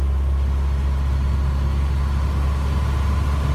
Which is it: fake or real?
real